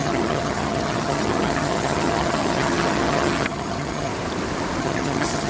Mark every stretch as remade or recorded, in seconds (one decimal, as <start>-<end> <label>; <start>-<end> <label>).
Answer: 0.0-4.1 remade; 4.1-4.8 recorded; 4.8-5.5 remade

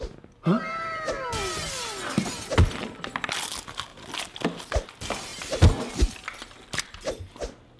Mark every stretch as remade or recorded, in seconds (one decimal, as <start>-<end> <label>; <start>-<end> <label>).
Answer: 0.0-7.8 recorded

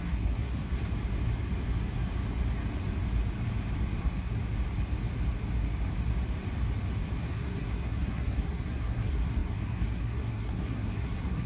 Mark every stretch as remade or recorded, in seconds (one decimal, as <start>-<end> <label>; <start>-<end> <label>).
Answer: 0.0-0.7 remade; 0.7-4.0 recorded; 4.0-4.4 remade; 4.4-7.3 recorded; 7.3-11.5 remade